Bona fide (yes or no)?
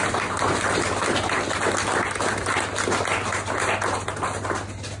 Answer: yes